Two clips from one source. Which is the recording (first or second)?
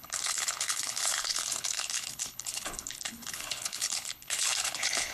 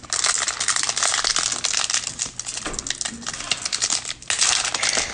second